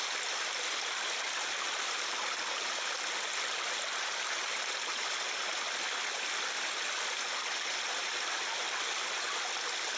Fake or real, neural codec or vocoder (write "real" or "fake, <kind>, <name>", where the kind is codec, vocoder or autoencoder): real